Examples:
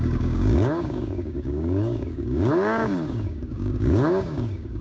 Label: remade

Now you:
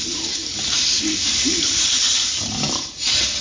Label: remade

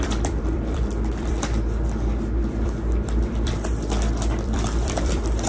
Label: remade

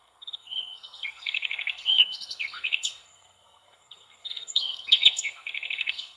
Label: remade